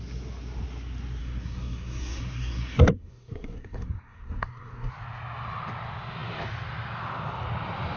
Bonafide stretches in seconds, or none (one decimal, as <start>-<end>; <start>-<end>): 0.0-1.2; 4.9-8.0